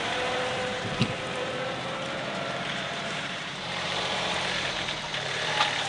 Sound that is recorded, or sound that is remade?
remade